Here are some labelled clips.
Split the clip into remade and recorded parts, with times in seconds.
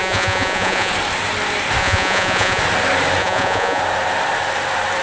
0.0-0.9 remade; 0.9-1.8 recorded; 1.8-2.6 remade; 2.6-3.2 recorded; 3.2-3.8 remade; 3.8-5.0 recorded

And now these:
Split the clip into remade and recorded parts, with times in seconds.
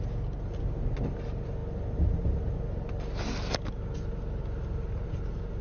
0.0-5.6 recorded